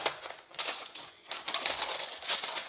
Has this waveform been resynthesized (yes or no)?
yes